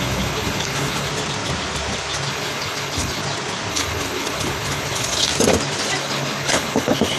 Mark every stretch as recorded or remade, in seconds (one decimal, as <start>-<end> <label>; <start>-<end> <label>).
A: 0.0-1.1 remade; 1.1-2.3 recorded; 2.3-3.2 remade; 3.2-3.7 recorded; 3.7-5.3 remade; 5.3-6.0 recorded; 6.0-7.2 remade